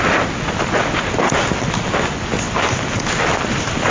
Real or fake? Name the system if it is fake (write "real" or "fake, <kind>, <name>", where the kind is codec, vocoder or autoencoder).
real